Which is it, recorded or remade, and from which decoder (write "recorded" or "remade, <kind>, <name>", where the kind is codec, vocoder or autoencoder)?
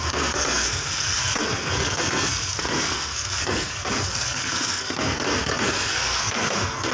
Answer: remade, codec, SNAC